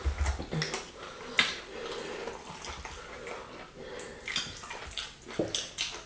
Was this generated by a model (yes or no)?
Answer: no